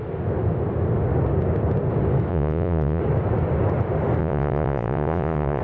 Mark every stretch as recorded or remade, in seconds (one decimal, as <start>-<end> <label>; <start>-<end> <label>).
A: 0.0-2.3 recorded; 2.3-3.0 remade; 3.0-4.2 recorded; 4.2-5.6 remade